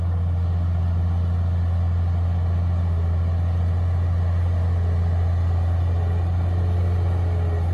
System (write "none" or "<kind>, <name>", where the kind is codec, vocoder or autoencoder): none